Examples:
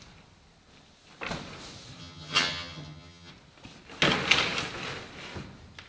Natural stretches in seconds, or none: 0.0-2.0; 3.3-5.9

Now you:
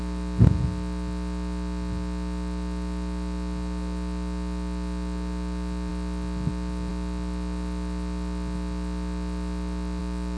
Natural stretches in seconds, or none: 0.0-10.4

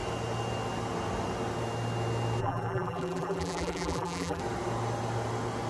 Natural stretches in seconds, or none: 0.0-2.4; 4.4-5.7

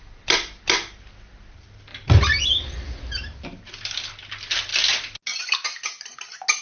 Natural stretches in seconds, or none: 0.0-6.6

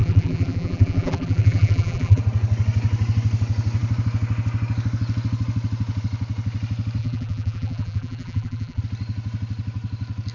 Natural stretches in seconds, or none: 2.2-7.0; 8.8-10.3

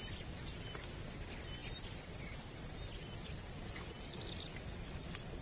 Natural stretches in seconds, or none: 0.0-5.4

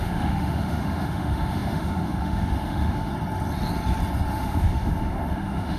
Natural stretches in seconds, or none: 3.1-4.3